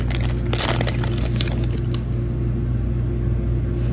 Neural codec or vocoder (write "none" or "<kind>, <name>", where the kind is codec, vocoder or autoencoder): none